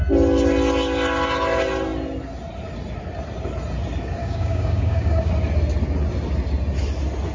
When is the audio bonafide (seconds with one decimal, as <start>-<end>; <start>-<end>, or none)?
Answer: 0.0-4.2; 5.3-7.3